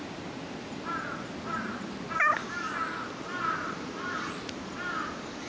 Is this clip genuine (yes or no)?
yes